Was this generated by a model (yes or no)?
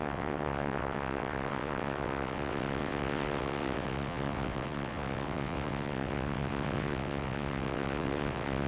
yes